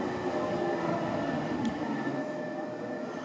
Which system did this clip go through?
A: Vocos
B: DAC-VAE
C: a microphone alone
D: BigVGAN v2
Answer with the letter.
C